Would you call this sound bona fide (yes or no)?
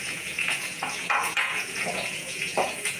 no